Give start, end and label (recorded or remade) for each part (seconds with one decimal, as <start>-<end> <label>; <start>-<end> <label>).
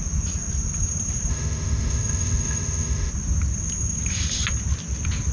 0.0-1.3 recorded; 1.3-3.1 remade; 3.1-5.3 recorded